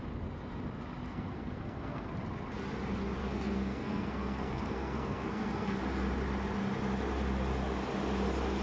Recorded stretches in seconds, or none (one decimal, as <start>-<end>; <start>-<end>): 0.0-1.1; 2.1-3.2; 5.8-8.6